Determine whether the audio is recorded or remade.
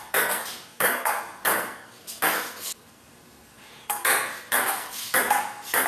remade